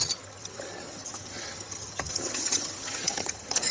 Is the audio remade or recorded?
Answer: remade